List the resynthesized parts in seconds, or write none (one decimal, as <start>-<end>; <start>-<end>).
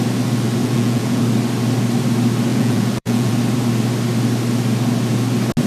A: 0.6-1.2; 2.5-3.3